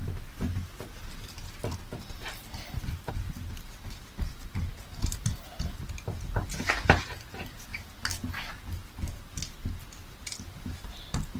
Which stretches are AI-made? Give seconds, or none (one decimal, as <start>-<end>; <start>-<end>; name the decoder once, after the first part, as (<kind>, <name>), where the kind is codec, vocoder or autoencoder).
0.0-3.1 (vocoder, BigVGAN v2); 8.8-9.5